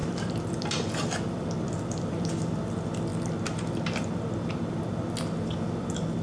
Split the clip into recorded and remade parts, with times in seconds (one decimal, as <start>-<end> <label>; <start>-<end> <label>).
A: 0.0-2.7 remade; 2.7-6.2 recorded